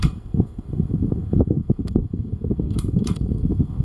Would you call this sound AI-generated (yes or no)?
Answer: yes